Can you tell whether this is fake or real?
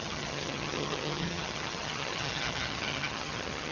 fake